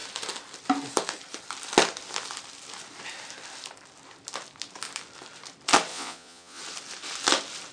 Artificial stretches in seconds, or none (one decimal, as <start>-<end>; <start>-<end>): 5.9-6.6